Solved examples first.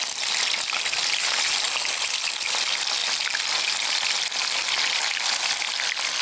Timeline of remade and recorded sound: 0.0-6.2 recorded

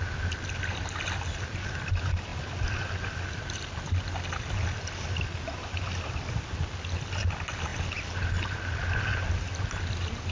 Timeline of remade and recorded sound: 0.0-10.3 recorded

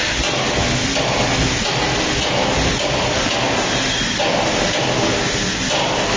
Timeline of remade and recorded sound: 0.0-6.2 recorded

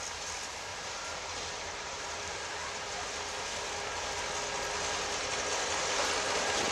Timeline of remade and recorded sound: 0.0-0.7 recorded; 0.7-2.5 remade; 2.5-6.7 recorded

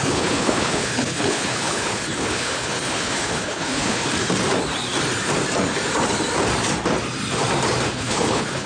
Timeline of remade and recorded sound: 0.0-4.1 remade; 4.1-7.9 recorded; 7.9-8.7 remade

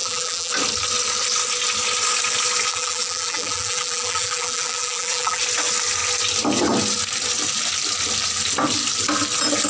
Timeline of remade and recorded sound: 0.0-0.5 remade; 0.5-2.7 recorded; 2.7-5.4 remade; 5.4-9.7 recorded